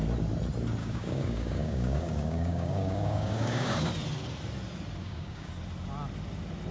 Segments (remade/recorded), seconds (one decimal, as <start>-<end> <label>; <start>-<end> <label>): 0.0-0.8 recorded; 0.8-3.9 remade; 3.9-5.0 recorded; 5.0-5.5 remade; 5.5-6.7 recorded